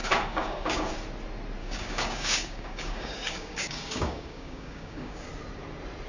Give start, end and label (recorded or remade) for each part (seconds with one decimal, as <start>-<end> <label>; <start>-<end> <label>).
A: 0.0-0.9 remade; 0.9-1.6 recorded; 1.6-5.3 remade; 5.3-6.1 recorded